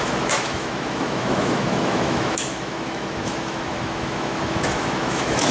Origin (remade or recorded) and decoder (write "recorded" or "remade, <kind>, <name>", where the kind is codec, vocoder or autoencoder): remade, autoencoder, DAC-VAE